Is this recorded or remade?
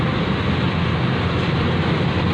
recorded